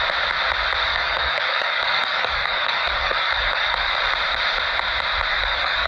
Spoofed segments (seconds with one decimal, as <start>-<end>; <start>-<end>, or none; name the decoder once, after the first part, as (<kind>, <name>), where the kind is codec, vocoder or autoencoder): 0.9-4.0 (codec, DAC); 5.3-5.9